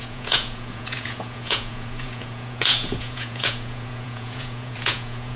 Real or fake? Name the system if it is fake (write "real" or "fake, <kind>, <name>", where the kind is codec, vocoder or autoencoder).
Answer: fake, vocoder, Vocos